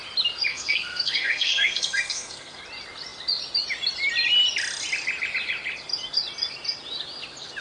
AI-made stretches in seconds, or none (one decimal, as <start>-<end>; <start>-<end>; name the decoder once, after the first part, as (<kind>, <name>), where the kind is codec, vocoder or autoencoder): 0.5-2.6 (codec, SNAC)